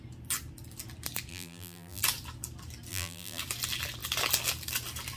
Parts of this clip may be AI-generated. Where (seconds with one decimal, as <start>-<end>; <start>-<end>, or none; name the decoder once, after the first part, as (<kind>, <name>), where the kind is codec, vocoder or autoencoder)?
1.3-2.0 (vocoder, BigVGAN v2); 2.9-3.4